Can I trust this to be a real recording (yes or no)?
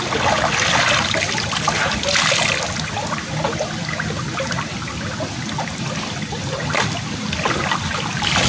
yes